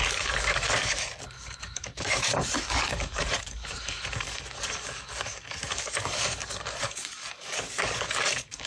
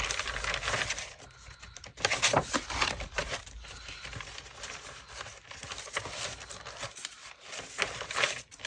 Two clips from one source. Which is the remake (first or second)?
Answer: first